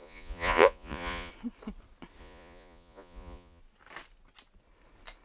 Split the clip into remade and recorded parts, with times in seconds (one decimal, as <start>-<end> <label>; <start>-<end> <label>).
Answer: 0.0-1.3 remade; 1.3-2.2 recorded; 2.2-3.6 remade; 3.6-5.2 recorded